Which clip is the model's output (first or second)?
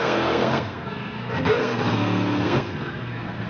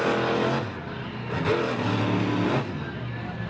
first